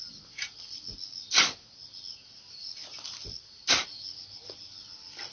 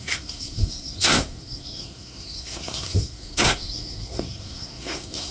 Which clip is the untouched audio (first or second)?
first